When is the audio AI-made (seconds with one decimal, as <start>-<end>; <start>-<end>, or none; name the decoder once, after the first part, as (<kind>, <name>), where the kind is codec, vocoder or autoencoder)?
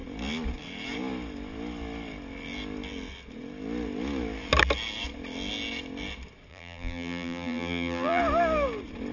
6.5-8.2 (vocoder, BigVGAN v2)